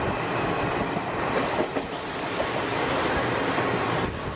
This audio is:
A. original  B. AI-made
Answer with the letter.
A